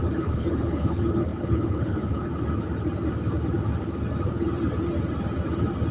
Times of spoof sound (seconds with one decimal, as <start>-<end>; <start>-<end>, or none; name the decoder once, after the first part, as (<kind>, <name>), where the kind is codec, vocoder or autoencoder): 0.0-2.3 (codec, HILCodec)